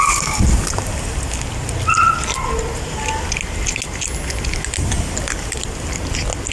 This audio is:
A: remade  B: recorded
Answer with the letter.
B